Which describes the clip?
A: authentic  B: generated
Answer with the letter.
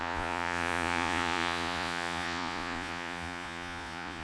B